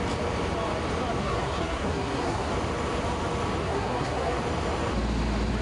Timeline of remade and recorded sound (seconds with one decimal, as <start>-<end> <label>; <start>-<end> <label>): 0.0-1.2 recorded; 1.2-2.5 remade; 2.5-3.6 recorded; 3.6-4.4 remade; 4.4-5.6 recorded